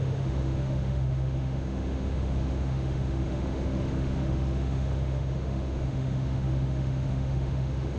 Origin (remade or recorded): remade